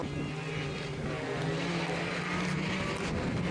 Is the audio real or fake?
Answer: real